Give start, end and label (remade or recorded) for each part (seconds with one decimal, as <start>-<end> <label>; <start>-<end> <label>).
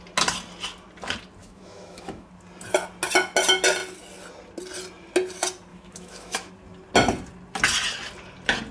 0.0-1.4 recorded; 1.4-2.3 remade; 2.3-5.7 recorded; 5.7-6.5 remade; 6.5-8.7 recorded